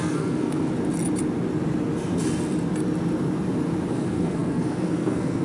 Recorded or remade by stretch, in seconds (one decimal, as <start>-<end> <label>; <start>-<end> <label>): 0.0-0.7 remade; 0.7-3.9 recorded; 3.9-5.4 remade